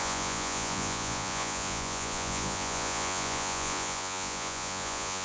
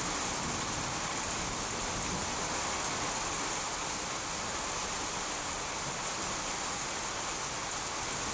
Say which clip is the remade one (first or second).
first